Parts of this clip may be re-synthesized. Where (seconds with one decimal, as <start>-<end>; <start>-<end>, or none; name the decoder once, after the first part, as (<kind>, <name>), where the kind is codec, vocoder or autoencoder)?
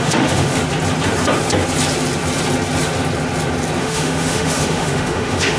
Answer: 0.0-0.6 (autoencoder, DAC-VAE); 3.8-5.6